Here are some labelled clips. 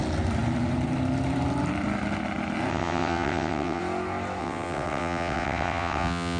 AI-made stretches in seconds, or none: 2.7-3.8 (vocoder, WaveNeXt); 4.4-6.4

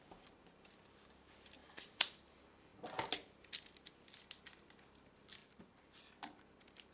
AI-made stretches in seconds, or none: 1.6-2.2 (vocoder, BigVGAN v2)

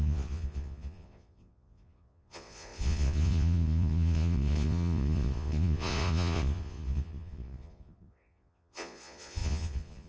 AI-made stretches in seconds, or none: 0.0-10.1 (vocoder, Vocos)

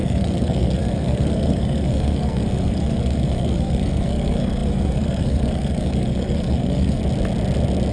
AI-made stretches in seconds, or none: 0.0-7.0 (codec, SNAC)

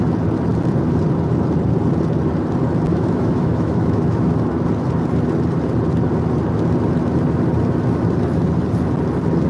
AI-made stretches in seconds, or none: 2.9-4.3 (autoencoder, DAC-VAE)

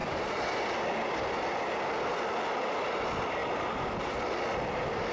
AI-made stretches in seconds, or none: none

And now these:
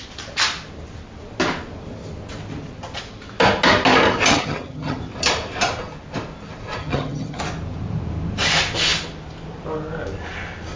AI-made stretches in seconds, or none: 4.3-5.0 (vocoder, HiFi-GAN); 6.8-7.4